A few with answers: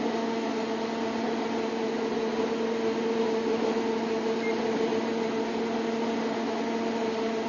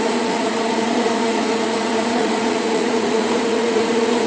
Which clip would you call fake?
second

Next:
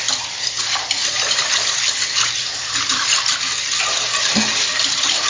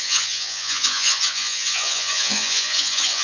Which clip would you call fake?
second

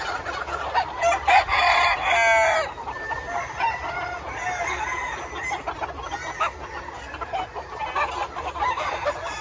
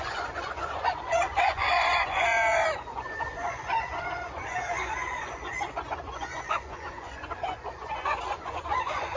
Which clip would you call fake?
second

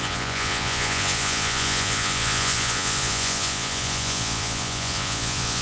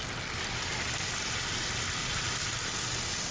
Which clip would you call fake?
first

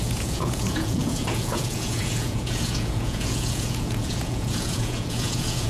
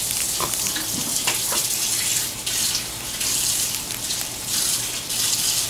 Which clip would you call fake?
first